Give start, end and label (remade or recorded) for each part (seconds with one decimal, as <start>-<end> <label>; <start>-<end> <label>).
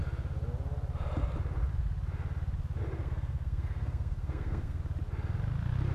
0.0-3.0 recorded; 3.0-4.8 remade; 4.8-5.9 recorded